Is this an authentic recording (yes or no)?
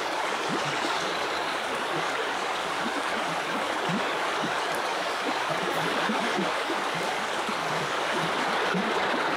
no